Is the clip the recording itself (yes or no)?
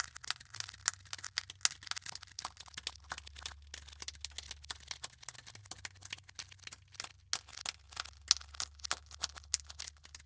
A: yes